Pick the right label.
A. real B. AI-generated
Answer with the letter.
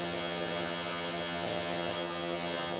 B